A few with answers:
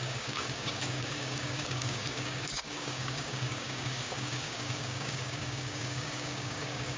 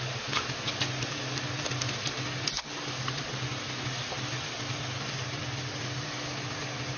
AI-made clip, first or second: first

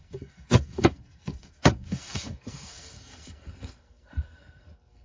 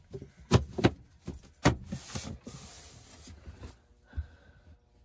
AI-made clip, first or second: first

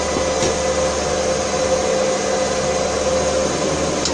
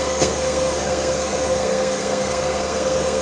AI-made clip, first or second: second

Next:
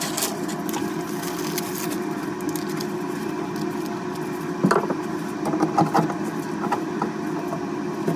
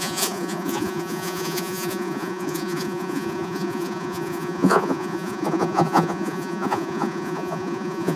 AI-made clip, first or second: second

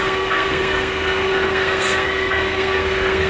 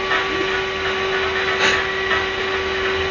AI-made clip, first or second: first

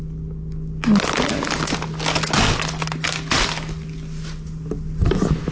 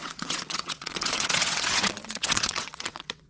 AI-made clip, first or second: second